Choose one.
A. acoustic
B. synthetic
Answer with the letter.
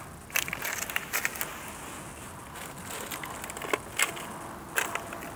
A